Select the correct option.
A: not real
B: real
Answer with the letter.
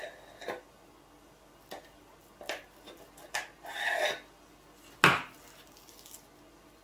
B